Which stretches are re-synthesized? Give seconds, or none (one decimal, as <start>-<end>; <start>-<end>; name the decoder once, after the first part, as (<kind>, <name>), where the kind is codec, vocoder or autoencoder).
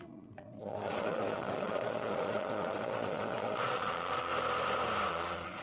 0.0-4.3 (vocoder, Vocos); 5.1-5.6